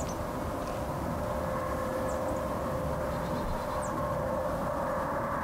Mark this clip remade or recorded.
recorded